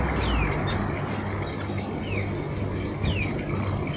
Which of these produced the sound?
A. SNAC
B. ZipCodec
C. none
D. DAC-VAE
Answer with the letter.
C